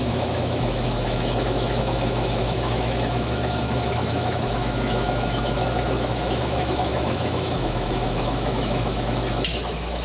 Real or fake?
fake